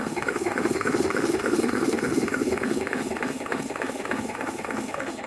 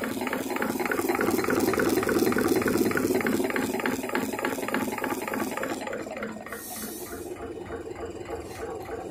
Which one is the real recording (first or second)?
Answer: second